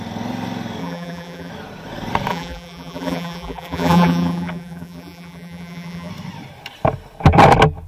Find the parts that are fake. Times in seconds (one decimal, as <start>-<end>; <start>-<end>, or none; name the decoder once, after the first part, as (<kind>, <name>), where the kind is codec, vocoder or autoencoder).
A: 0.8-1.5 (vocoder, BigVGAN v2); 2.3-6.1